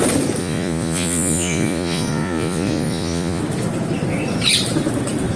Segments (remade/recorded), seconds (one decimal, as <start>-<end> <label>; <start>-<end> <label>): 0.0-0.4 recorded; 0.4-3.4 remade; 3.4-5.4 recorded